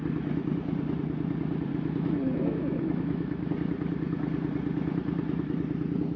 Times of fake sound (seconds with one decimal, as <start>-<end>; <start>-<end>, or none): 1.7-3.5